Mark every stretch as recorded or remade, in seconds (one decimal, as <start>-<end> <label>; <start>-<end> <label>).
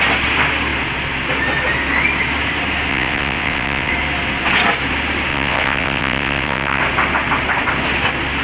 0.0-2.9 recorded; 2.9-3.9 remade; 3.9-5.3 recorded; 5.3-6.8 remade; 6.8-8.4 recorded